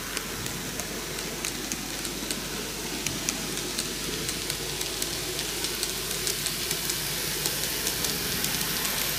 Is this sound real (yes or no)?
yes